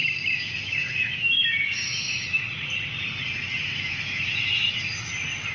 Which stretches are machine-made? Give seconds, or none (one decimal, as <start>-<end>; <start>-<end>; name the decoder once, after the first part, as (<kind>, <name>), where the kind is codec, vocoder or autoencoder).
0.0-2.4 (autoencoder, DAC-VAE); 3.6-5.1